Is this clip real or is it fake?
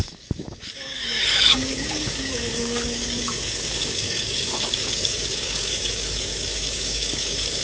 fake